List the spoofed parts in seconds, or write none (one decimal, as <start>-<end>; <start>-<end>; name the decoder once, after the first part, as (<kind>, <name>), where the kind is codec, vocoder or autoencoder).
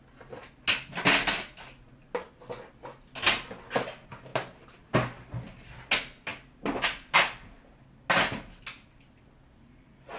none